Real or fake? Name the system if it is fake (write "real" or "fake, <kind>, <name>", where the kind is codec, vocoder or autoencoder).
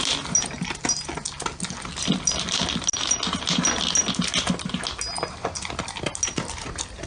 real